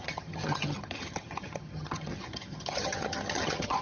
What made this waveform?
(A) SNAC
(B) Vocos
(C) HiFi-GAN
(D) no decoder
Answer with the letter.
C